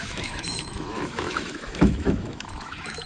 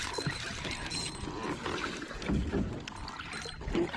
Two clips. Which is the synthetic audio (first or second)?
first